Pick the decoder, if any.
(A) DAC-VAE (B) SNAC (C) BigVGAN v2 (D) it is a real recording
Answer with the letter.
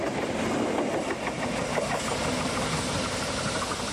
D